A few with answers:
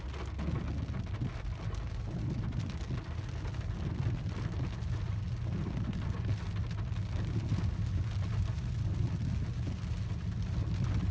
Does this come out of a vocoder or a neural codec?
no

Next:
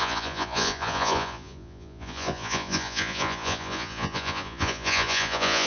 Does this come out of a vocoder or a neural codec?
yes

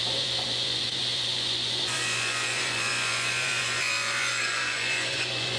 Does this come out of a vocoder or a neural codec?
yes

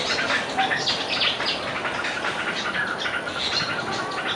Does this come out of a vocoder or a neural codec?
no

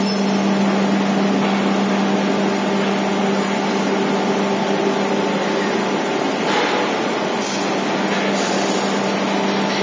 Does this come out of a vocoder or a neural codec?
no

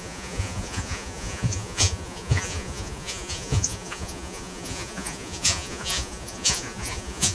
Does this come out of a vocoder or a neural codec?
yes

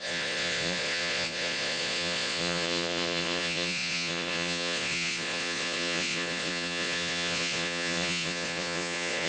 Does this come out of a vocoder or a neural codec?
yes